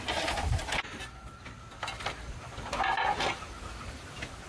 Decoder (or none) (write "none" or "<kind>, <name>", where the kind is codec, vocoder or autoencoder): none